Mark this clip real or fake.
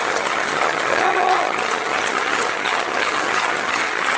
fake